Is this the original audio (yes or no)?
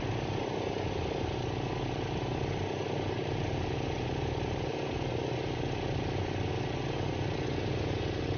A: yes